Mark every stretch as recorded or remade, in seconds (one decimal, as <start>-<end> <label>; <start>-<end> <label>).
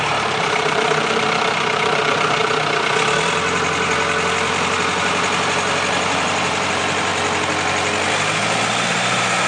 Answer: 0.0-2.4 remade; 2.4-5.9 recorded; 5.9-7.1 remade; 7.1-8.9 recorded; 8.9-9.5 remade